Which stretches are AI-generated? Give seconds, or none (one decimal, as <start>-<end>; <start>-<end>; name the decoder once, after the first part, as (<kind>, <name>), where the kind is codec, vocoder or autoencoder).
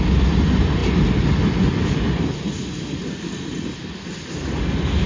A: none